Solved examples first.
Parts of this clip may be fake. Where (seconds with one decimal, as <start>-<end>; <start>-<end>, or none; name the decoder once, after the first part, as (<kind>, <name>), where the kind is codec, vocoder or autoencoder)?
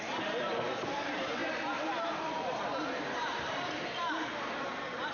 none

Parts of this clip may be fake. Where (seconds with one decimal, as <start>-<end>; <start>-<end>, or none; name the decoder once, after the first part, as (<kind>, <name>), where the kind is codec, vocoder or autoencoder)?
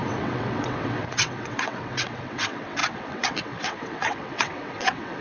0.0-5.2 (vocoder, WaveNeXt)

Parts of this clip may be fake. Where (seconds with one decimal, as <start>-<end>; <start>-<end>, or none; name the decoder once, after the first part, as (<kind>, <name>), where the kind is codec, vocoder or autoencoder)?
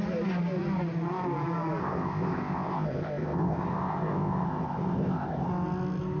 1.8-5.5 (codec, ZipCodec)